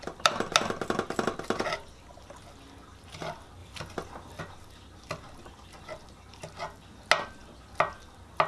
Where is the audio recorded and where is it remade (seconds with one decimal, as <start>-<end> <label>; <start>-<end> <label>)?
0.0-8.5 recorded